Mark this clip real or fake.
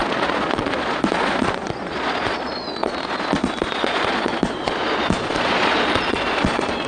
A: fake